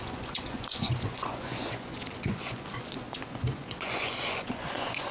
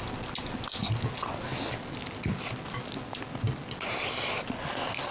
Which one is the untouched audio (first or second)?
second